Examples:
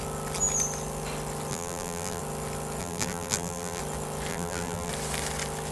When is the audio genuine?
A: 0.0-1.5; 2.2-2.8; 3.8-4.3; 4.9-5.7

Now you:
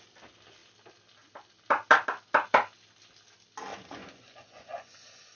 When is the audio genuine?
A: 0.0-3.7

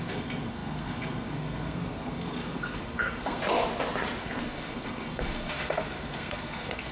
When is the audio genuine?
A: 3.4-4.2